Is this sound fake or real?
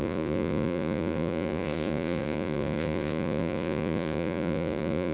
fake